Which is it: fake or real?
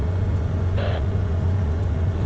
fake